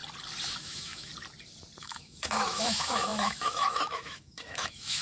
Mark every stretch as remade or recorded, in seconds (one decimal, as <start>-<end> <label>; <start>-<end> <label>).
0.0-0.6 recorded; 0.6-1.1 remade; 1.1-1.8 recorded; 1.8-5.0 remade